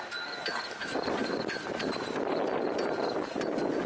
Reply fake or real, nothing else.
real